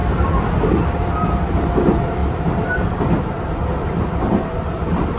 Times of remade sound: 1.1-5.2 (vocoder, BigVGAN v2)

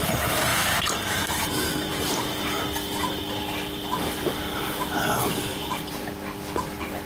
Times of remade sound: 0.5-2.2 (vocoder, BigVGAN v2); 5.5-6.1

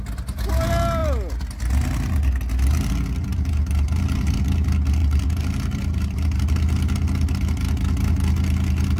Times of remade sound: 3.3-4.4 (vocoder, BigVGAN v2); 5.0-6.4

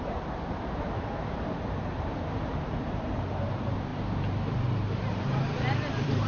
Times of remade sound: 0.0-6.3 (vocoder, BigVGAN v2)